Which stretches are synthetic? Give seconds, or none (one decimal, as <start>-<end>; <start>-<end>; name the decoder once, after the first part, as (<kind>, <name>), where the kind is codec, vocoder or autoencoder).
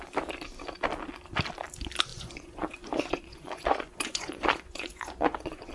2.1-5.7 (vocoder, Vocos)